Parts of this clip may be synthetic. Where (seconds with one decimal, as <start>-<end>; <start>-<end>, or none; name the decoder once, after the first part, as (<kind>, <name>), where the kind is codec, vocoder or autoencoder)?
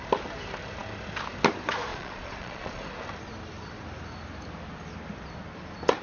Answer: 1.9-2.8 (vocoder, Vocos)